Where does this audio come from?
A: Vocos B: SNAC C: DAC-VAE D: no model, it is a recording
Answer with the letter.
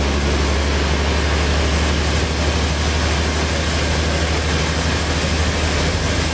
D